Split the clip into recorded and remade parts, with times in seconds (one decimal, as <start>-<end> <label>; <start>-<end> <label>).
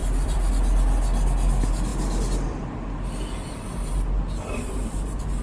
0.0-0.5 remade; 0.5-1.9 recorded; 1.9-5.4 remade